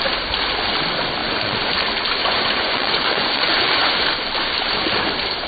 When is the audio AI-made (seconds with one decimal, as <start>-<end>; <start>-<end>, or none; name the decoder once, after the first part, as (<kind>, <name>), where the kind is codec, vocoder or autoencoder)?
1.2-1.7 (vocoder, Vocos); 2.2-4.0